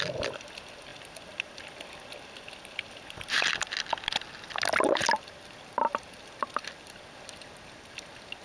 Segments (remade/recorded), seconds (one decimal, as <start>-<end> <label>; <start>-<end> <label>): 0.0-8.4 recorded